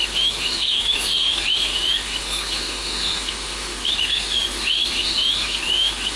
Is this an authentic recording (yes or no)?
no